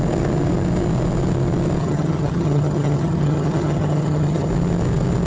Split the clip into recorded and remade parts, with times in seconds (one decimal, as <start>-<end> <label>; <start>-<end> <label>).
0.0-1.8 recorded; 1.8-4.5 remade; 4.5-5.3 recorded